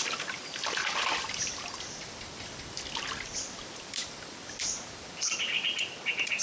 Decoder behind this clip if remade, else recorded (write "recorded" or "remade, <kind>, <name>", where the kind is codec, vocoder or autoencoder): remade, vocoder, BigVGAN v2